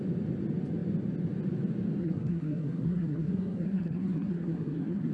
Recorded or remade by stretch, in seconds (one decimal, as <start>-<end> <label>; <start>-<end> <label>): 0.0-2.0 recorded; 2.0-5.1 remade